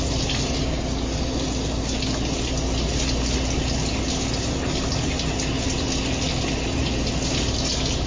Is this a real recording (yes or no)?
yes